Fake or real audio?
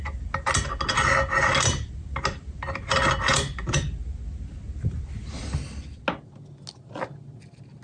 real